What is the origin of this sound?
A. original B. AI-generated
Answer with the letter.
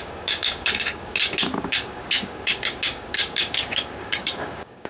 B